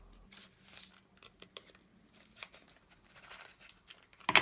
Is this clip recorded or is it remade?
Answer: recorded